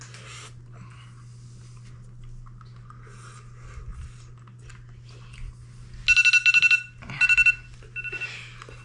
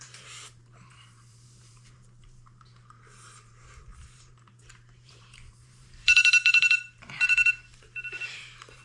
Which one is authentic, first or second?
first